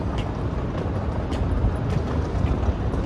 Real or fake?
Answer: real